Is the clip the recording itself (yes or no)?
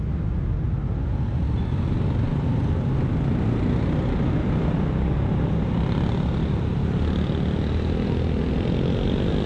yes